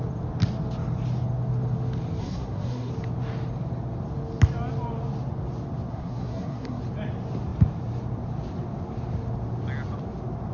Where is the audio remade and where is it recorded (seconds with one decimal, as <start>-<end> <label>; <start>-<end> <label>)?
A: 0.0-2.2 recorded; 2.2-2.9 remade; 2.9-5.9 recorded; 5.9-6.8 remade; 6.8-10.5 recorded